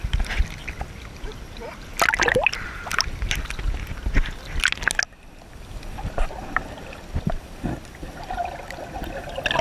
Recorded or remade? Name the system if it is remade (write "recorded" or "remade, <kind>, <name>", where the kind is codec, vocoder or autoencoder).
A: recorded